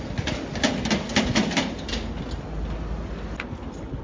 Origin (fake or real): real